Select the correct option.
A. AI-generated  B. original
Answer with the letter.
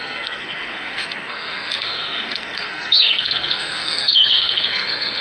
A